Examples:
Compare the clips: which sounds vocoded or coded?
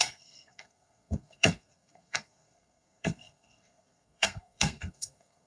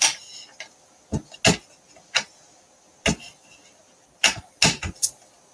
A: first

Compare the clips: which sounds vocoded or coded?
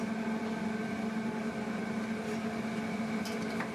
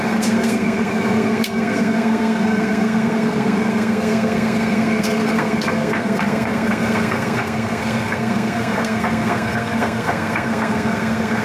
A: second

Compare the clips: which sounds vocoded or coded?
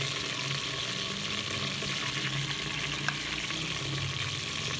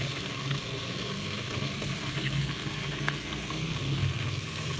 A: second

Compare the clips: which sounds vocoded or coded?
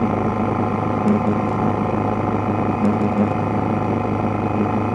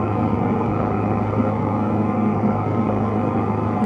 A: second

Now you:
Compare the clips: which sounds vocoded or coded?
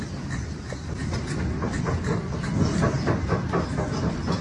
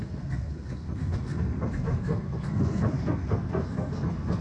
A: second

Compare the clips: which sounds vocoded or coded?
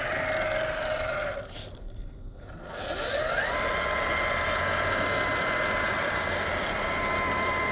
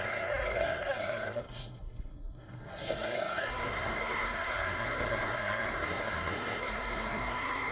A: second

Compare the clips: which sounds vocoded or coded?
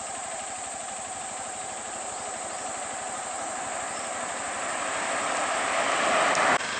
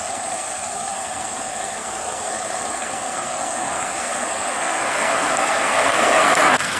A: second